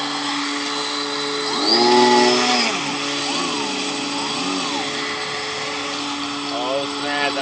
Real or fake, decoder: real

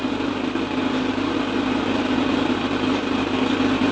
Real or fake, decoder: real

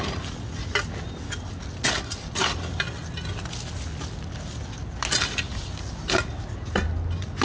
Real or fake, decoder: real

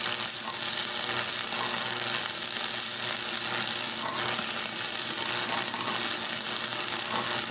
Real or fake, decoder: real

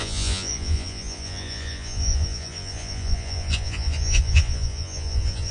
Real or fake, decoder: fake, vocoder, Vocos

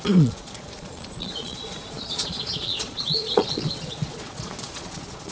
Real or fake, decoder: fake, vocoder, Vocos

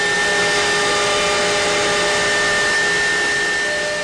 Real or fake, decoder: real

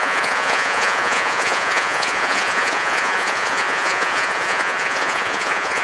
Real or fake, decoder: fake, vocoder, Vocos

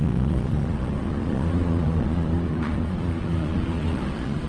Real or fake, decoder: fake, vocoder, Vocos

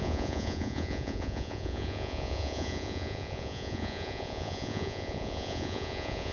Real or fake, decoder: fake, vocoder, Vocos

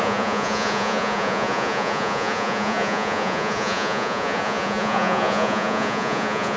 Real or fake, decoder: fake, vocoder, Vocos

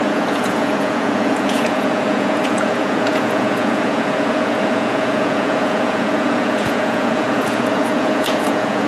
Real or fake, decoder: fake, vocoder, Vocos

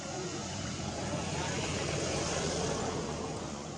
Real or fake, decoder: fake, vocoder, Vocos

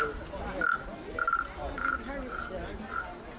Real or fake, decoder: real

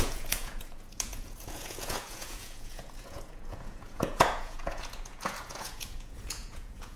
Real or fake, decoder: fake, vocoder, Vocos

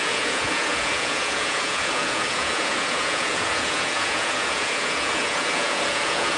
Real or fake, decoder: fake, vocoder, Vocos